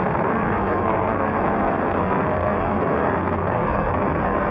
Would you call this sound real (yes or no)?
no